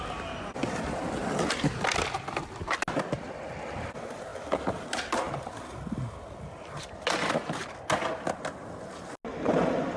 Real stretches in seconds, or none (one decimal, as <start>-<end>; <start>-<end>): 0.0-10.0